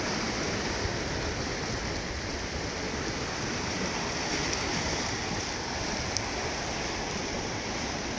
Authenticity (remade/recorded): recorded